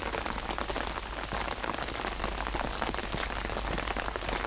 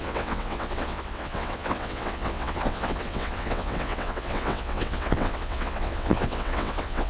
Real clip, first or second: first